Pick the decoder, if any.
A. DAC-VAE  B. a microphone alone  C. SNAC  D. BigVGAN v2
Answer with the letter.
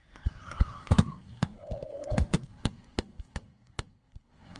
C